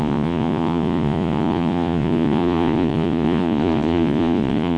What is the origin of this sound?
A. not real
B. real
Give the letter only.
A